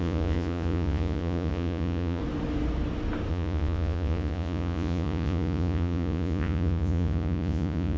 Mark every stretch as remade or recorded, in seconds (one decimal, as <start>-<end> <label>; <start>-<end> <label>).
0.0-2.2 remade; 2.2-3.3 recorded; 3.3-8.0 remade